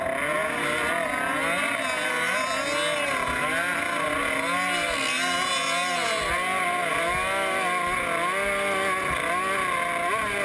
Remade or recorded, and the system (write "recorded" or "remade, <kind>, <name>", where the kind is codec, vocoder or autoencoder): recorded